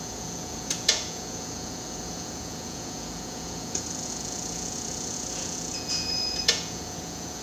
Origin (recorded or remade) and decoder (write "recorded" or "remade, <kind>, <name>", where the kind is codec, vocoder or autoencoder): remade, vocoder, Vocos